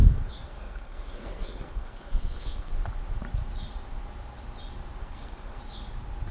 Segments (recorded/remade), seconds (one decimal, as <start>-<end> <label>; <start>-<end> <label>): 0.0-2.7 remade; 2.7-5.0 recorded; 5.0-5.6 remade; 5.6-6.3 recorded